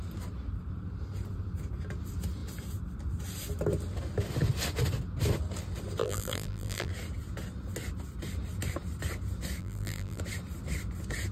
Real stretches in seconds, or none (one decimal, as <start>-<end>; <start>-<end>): 0.0-6.0; 6.9-9.6; 10.2-11.3

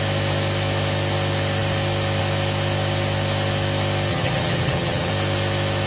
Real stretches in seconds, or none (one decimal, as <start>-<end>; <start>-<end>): 0.0-4.1; 5.1-5.9

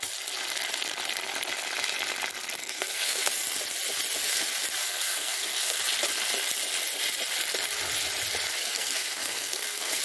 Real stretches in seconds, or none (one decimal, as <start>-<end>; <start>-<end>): 0.0-2.6; 3.3-4.8; 5.8-8.6

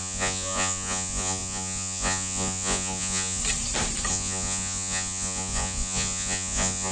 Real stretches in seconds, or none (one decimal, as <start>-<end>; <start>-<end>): 3.4-4.1